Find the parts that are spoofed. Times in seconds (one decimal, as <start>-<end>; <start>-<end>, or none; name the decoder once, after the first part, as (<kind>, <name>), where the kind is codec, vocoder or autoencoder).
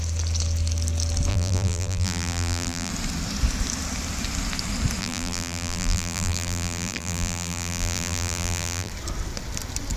1.3-2.9 (vocoder, BigVGAN v2); 5.0-8.9